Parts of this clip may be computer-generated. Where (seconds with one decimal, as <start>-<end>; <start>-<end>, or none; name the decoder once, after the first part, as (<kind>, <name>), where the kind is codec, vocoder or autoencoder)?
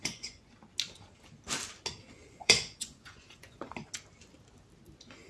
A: 0.0-0.5 (vocoder, Vocos); 2.2-3.7